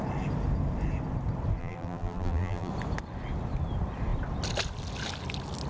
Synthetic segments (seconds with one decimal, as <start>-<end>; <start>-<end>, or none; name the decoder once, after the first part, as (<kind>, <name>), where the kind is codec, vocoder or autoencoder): 1.6-2.7 (vocoder, BigVGAN v2)